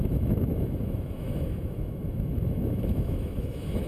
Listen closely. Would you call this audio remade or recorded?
remade